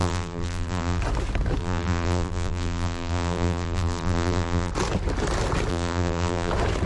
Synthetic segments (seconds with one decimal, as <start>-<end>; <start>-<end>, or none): 0.0-1.0; 1.6-4.7; 5.7-6.5